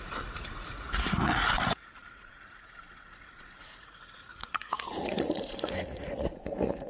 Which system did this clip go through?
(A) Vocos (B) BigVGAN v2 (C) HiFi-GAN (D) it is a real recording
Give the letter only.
A